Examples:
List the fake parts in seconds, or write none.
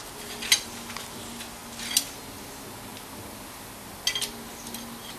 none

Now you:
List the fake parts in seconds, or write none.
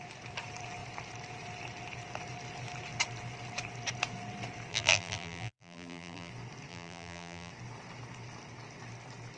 4.7-6.3; 6.7-7.5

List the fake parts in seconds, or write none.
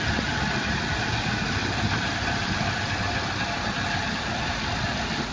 none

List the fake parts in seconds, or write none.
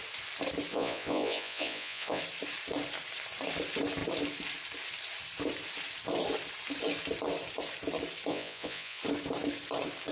0.7-2.2; 8.3-9.0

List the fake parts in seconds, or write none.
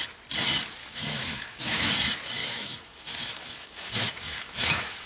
0.8-1.9; 2.4-5.1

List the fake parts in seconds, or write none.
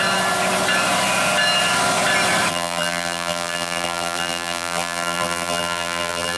2.5-6.4